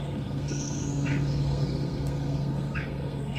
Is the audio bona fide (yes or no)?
no